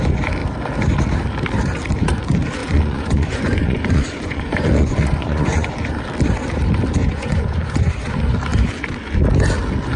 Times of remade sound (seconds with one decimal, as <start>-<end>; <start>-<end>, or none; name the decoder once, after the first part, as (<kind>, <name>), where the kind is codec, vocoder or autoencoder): 2.6-5.7 (vocoder, Vocos); 7.0-8.1